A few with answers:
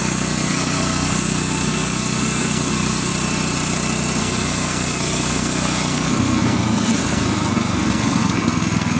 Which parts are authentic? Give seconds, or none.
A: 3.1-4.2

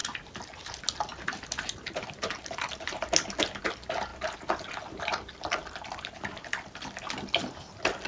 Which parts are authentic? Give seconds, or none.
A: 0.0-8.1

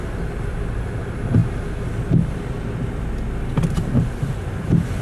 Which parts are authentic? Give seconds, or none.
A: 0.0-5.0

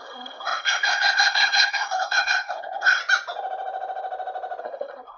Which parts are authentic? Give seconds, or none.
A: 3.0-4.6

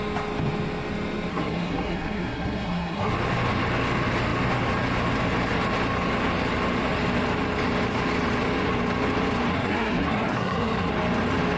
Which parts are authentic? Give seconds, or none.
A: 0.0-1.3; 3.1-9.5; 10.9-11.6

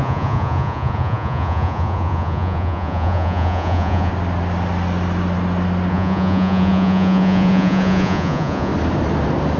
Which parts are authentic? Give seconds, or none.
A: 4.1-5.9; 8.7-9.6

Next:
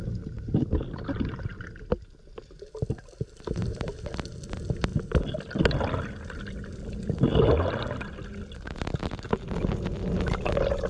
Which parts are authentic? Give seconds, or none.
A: 0.0-10.9

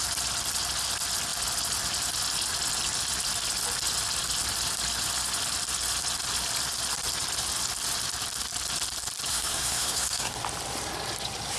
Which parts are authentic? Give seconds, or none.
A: 0.0-9.3; 10.3-11.6